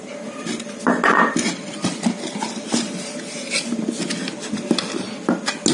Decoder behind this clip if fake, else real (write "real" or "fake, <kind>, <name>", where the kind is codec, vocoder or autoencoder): real